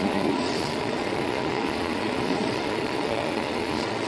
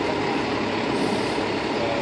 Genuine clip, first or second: second